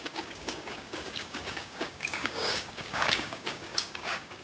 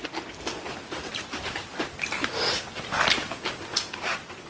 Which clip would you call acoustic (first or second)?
second